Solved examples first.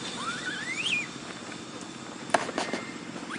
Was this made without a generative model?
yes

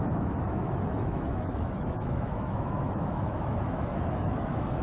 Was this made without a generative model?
no